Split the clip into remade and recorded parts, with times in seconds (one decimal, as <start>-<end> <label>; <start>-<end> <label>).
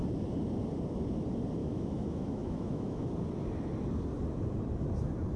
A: 0.0-1.6 recorded; 1.6-3.1 remade; 3.1-5.4 recorded